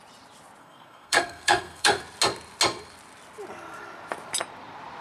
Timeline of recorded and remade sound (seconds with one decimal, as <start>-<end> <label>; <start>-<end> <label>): 0.0-0.6 recorded; 0.6-2.0 remade; 2.0-5.0 recorded